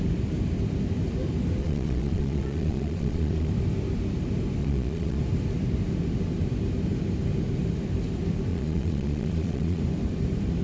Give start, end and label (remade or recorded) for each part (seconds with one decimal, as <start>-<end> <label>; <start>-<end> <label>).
0.0-1.6 recorded; 1.6-3.5 remade; 3.5-4.6 recorded; 4.6-5.2 remade; 5.2-8.5 recorded; 8.5-9.8 remade; 9.8-10.6 recorded